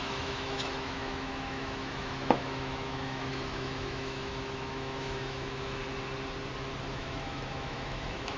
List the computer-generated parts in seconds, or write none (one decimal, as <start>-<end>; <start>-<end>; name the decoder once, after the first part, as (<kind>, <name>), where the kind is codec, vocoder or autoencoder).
0.0-5.8 (autoencoder, DAC-VAE); 6.9-8.4